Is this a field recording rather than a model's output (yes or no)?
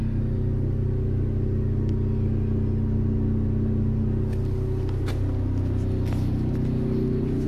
yes